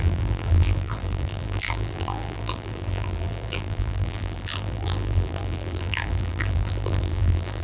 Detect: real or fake fake